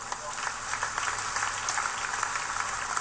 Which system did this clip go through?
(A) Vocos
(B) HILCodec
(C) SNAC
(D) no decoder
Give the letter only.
D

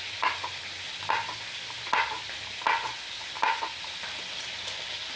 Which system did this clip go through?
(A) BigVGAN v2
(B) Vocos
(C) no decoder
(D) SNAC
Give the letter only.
C